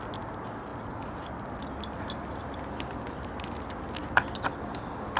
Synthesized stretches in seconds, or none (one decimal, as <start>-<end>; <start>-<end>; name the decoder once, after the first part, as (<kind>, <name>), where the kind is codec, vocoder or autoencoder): none